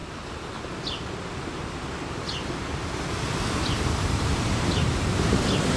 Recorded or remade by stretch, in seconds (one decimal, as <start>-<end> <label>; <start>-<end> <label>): 0.0-3.5 recorded; 3.5-5.8 remade